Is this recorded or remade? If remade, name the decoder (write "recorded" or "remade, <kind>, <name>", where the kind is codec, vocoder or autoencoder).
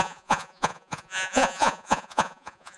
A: remade, vocoder, Vocos